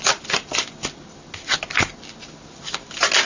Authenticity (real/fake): real